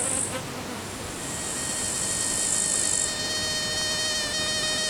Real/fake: real